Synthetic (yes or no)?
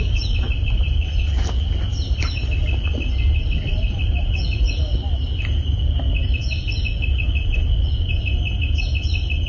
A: no